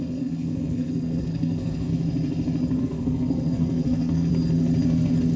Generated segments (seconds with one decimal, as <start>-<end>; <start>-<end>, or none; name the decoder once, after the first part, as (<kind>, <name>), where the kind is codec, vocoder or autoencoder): 0.0-1.9 (codec, SNAC); 2.8-4.3